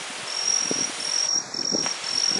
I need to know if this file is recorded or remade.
recorded